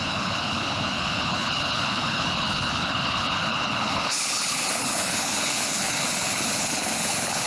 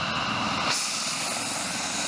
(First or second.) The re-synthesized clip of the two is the first